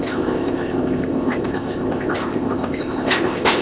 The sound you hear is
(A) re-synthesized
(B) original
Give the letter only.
A